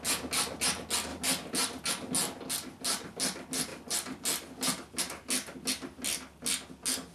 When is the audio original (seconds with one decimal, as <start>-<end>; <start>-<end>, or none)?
0.0-7.1